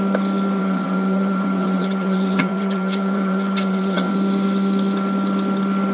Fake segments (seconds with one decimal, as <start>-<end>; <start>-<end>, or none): 0.6-4.1